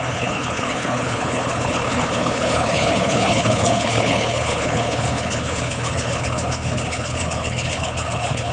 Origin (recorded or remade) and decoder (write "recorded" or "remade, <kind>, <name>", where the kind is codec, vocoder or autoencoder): remade, codec, HILCodec